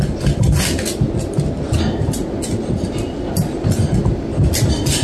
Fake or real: real